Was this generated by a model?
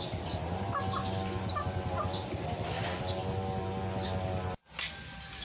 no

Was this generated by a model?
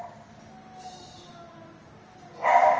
no